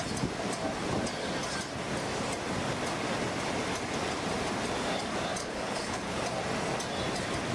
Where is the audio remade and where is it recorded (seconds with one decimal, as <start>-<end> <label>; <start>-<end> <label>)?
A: 0.0-5.4 recorded; 5.4-6.2 remade; 6.2-7.5 recorded